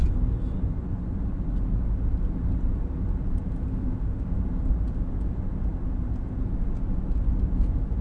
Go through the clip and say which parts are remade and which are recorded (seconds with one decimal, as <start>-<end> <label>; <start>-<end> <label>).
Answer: 0.0-3.7 recorded; 3.7-4.3 remade; 4.3-8.0 recorded